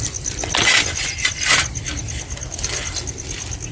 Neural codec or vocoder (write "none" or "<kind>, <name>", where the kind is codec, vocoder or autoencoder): none